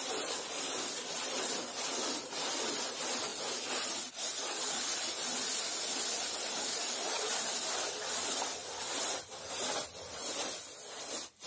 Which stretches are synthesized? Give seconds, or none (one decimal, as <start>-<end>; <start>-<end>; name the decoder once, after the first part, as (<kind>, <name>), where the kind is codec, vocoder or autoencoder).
none